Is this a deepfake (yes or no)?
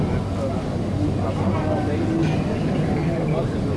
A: no